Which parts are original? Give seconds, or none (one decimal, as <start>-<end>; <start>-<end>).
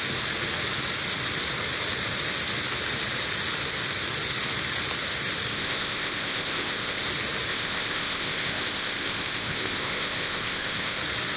0.0-5.5; 7.1-7.5; 11.0-11.4